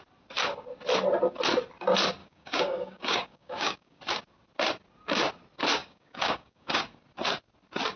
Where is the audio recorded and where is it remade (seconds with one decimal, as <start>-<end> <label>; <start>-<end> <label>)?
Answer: 0.0-2.2 recorded; 2.2-4.0 remade; 4.0-5.8 recorded; 5.8-6.8 remade; 6.8-8.0 recorded